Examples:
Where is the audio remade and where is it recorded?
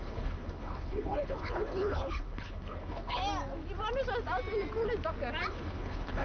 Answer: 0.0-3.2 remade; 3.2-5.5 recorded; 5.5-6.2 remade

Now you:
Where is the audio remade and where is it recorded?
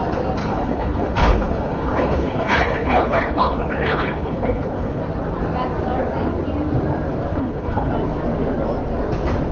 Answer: 0.0-0.4 recorded; 0.4-5.0 remade; 5.0-7.3 recorded; 7.3-7.9 remade; 7.9-9.5 recorded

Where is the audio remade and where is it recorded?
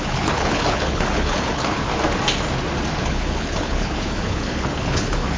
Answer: 0.0-1.9 remade; 1.9-3.0 recorded; 3.0-5.4 remade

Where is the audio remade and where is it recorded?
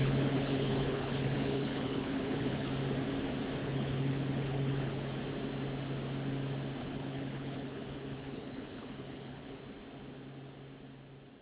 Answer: 0.0-2.7 remade; 2.7-3.6 recorded; 3.6-5.2 remade; 5.2-6.8 recorded; 6.8-9.6 remade; 9.6-11.4 recorded